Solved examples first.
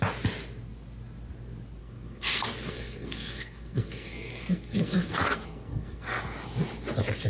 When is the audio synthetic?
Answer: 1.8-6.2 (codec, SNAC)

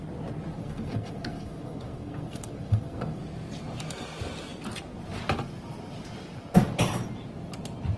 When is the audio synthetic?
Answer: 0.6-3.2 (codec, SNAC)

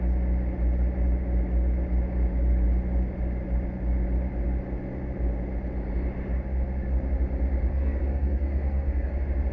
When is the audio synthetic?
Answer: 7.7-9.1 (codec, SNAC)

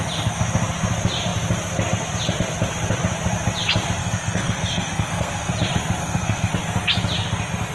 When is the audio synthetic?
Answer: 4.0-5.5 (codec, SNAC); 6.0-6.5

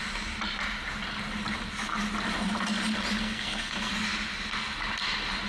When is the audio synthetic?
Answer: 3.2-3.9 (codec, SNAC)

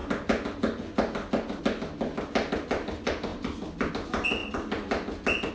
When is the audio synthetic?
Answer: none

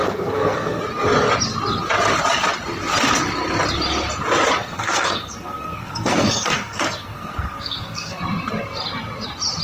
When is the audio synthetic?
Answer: 0.0-0.8 (codec, SNAC); 4.6-8.2

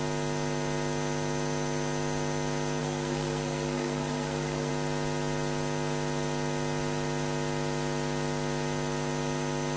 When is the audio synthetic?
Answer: 2.8-4.7 (codec, SNAC)